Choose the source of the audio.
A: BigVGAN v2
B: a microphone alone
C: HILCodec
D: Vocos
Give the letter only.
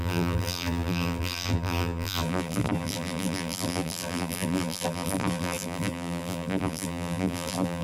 A